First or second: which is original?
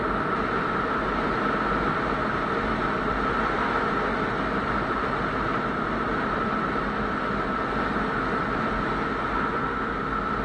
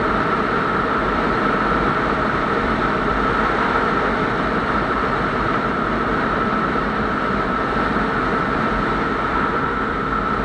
first